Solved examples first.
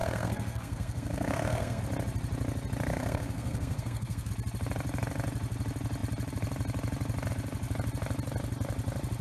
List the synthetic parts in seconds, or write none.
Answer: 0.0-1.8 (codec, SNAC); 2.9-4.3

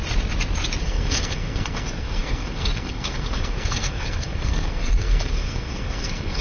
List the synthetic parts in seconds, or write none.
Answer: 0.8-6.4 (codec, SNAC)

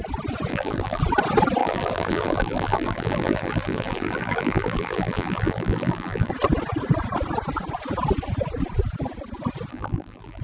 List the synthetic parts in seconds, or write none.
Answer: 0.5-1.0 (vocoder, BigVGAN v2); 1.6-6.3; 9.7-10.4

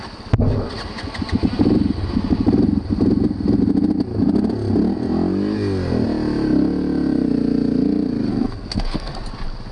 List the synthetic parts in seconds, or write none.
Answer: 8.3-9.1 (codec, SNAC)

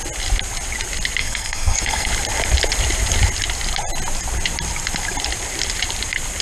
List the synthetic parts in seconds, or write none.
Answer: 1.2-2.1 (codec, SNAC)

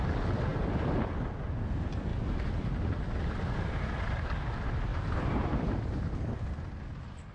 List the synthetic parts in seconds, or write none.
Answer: 4.9-6.7 (vocoder, BigVGAN v2)